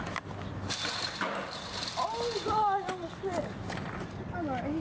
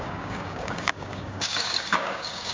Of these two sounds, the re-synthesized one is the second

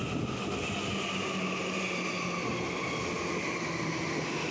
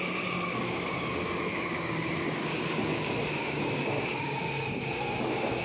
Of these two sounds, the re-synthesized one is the second